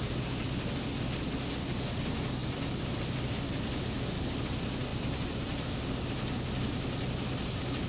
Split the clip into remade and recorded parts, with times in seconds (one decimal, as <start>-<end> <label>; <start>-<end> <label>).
0.0-4.9 recorded; 4.9-5.7 remade; 5.7-7.9 recorded